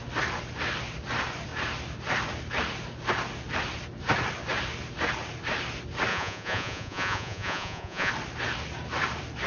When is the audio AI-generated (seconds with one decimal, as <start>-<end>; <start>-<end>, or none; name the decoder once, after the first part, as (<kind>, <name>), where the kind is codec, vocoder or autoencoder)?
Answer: 6.1-8.1 (vocoder, Vocos)